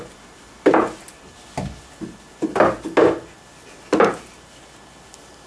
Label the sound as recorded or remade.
recorded